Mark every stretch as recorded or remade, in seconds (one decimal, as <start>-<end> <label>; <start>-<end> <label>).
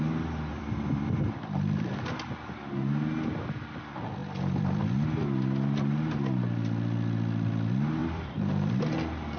0.0-0.5 recorded; 0.5-1.9 remade; 1.9-4.2 recorded; 4.2-4.8 remade; 4.8-8.0 recorded; 8.0-8.8 remade; 8.8-9.4 recorded